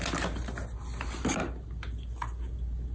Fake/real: real